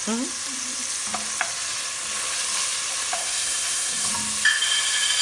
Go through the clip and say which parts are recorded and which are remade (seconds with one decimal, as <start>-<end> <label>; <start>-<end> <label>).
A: 0.0-3.2 recorded; 3.2-4.1 remade; 4.1-5.2 recorded